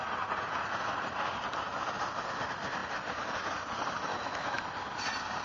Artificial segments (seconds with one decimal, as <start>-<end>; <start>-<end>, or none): 4.1-4.6